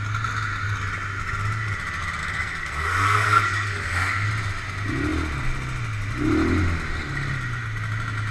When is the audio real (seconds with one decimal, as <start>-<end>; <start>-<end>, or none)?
0.0-2.2; 4.3-8.3